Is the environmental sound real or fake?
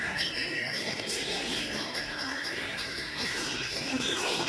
fake